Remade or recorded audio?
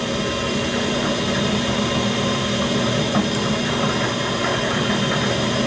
recorded